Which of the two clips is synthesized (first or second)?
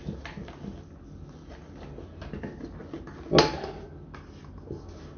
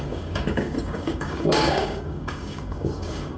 second